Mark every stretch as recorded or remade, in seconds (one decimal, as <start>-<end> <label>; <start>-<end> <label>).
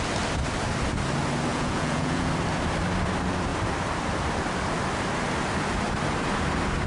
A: 0.0-1.5 recorded; 1.5-2.3 remade; 2.3-6.9 recorded